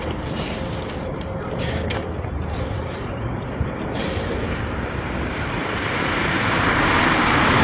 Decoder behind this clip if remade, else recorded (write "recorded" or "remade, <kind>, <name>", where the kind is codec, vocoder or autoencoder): remade, vocoder, BigVGAN v2